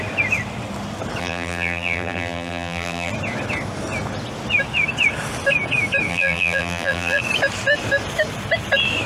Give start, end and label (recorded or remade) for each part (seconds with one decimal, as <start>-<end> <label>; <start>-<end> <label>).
0.0-1.2 recorded; 1.2-3.1 remade; 3.1-6.1 recorded; 6.1-7.2 remade; 7.2-9.1 recorded